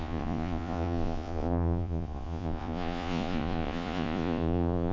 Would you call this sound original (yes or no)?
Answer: no